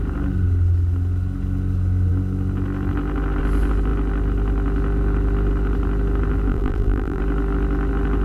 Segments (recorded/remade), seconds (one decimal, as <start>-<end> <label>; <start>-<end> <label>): 0.0-6.5 recorded; 6.5-7.2 remade; 7.2-8.2 recorded